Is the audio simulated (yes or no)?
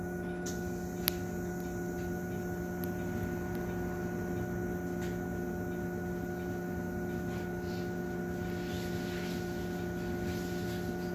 no